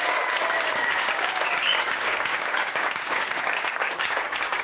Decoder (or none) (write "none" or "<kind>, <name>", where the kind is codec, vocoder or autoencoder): codec, DAC